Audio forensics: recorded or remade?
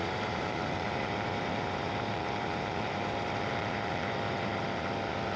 remade